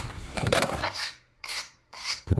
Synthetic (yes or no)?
yes